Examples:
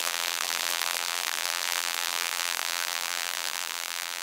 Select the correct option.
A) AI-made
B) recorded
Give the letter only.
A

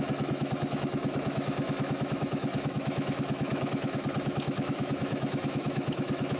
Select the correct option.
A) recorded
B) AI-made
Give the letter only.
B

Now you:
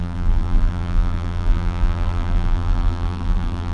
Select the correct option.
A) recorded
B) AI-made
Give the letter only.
B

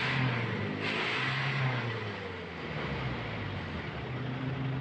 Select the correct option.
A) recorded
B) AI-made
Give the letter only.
A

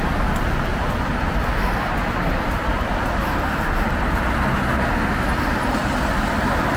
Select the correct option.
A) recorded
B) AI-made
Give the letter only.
A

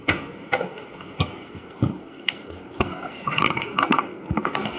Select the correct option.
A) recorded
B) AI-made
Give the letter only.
B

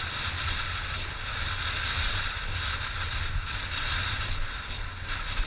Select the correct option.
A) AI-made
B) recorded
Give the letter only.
B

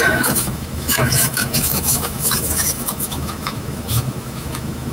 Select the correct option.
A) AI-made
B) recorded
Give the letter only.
A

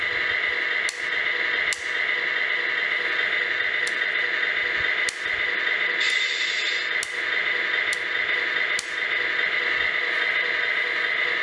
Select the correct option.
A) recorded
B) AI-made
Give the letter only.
A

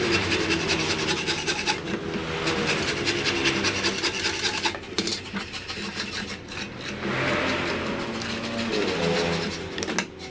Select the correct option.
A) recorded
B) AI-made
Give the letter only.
A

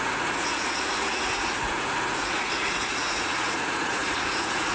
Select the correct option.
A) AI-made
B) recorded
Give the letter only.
A